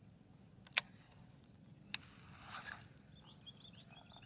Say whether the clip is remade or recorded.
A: recorded